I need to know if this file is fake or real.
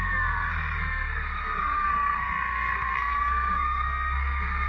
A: fake